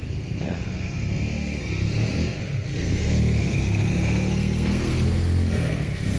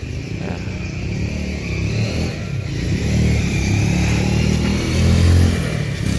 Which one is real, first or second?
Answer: second